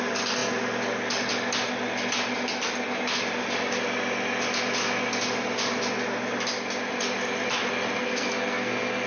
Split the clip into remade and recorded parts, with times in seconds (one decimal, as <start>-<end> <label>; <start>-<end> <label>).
0.0-8.0 recorded; 8.0-9.1 remade